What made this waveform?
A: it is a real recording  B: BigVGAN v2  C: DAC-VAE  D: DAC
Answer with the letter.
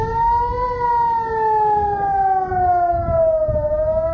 A